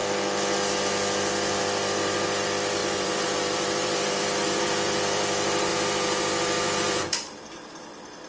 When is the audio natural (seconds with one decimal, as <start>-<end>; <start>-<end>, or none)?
0.0-1.6